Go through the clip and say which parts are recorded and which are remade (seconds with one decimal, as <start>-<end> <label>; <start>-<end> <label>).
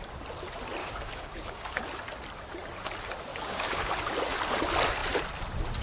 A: 0.0-0.8 recorded; 0.8-1.8 remade; 1.8-3.3 recorded; 3.3-3.9 remade; 3.9-5.8 recorded